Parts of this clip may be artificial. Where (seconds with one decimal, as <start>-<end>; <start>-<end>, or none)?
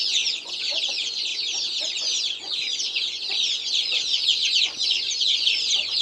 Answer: 0.0-1.3; 1.8-6.0